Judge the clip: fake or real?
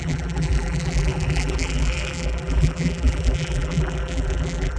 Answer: fake